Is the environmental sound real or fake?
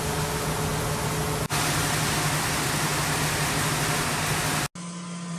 real